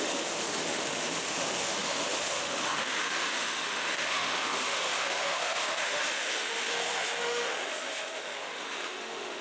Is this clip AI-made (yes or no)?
yes